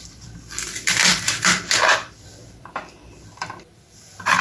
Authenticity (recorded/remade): remade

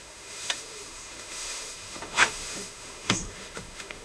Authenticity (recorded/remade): remade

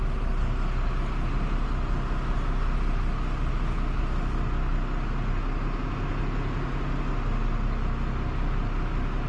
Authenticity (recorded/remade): recorded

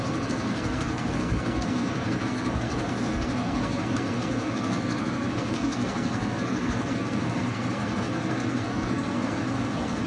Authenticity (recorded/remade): remade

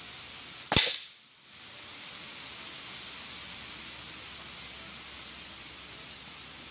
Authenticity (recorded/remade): recorded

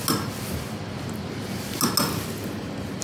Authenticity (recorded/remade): recorded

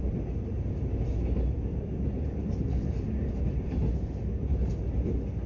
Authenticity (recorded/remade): recorded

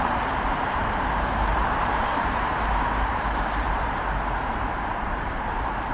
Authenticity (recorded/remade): remade